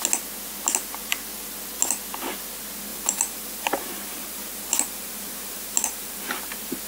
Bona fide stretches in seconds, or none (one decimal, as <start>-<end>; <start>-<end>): 0.0-2.9